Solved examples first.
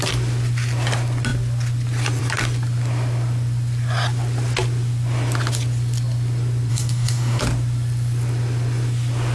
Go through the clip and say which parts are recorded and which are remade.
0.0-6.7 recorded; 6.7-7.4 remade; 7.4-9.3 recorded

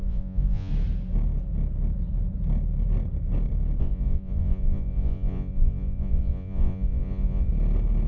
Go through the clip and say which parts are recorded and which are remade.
0.0-0.7 remade; 0.7-3.8 recorded; 3.8-7.5 remade; 7.5-8.1 recorded

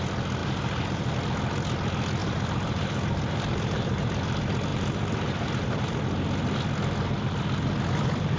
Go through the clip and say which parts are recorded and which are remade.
0.0-0.4 recorded; 0.4-1.1 remade; 1.1-2.2 recorded; 2.2-4.1 remade; 4.1-4.7 recorded; 4.7-6.0 remade; 6.0-8.4 recorded

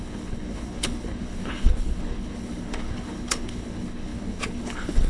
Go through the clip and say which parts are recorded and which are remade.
0.0-5.1 remade

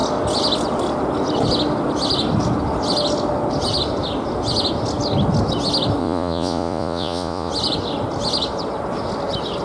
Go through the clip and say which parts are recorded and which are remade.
0.0-6.0 recorded; 6.0-7.5 remade; 7.5-9.6 recorded